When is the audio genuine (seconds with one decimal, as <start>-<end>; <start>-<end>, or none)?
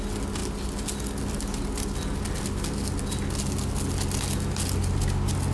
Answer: 0.0-5.5